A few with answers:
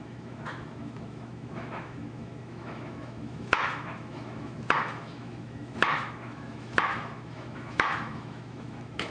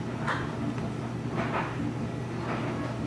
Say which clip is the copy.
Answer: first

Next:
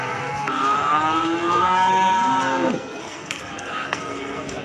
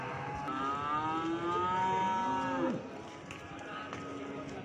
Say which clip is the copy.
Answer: first